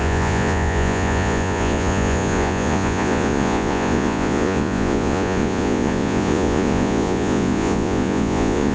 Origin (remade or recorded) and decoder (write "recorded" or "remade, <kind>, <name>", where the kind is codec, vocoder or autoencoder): remade, vocoder, Vocos